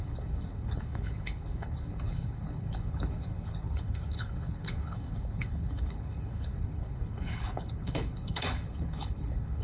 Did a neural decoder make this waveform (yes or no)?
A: yes